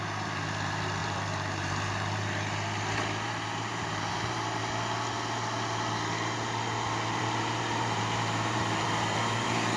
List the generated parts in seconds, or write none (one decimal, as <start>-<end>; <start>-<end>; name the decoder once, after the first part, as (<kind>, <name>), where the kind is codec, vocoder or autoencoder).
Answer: 0.0-4.6 (vocoder, BigVGAN v2); 7.2-9.8